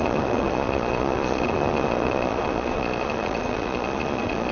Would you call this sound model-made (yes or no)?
yes